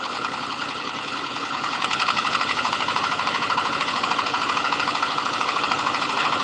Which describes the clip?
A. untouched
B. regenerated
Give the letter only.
B